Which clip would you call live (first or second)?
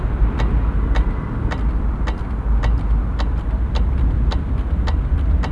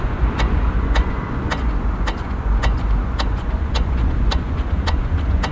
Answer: first